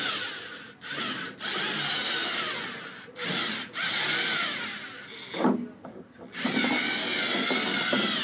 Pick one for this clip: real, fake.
real